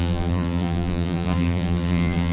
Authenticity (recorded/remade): remade